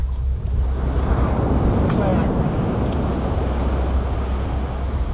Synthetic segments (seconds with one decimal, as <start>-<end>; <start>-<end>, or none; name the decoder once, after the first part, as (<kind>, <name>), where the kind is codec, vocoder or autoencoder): 0.0-1.1 (vocoder, BigVGAN v2)